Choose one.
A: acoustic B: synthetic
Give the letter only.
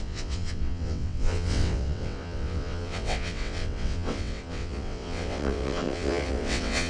B